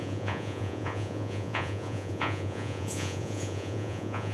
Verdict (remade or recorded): remade